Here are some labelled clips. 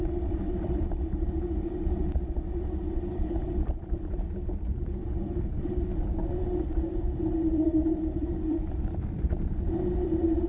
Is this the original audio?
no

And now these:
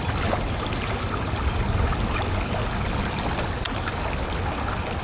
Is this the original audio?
yes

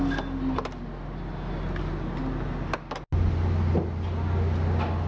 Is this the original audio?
yes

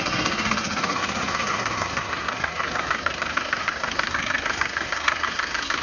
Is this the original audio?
no